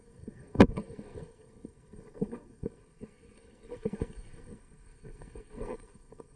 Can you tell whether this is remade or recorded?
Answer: remade